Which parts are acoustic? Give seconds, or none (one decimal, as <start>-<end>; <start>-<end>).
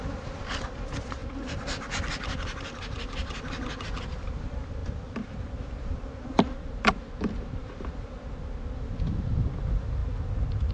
1.2-3.8; 4.8-5.5